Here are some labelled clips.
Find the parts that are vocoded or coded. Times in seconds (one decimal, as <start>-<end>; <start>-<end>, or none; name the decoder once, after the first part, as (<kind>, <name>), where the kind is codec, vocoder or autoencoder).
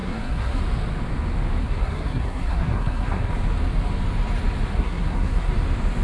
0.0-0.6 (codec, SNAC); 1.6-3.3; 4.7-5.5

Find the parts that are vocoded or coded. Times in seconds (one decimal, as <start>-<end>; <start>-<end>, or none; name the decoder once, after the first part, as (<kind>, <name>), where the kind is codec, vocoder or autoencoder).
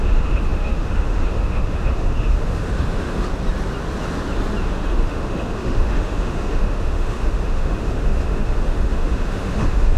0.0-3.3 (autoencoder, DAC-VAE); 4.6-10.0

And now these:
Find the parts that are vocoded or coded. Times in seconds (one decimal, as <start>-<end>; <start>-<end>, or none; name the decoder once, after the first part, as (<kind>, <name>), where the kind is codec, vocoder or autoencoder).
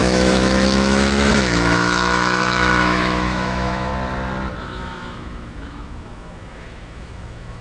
0.0-3.9 (autoencoder, DAC-VAE); 4.6-7.6